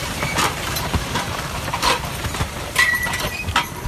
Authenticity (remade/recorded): remade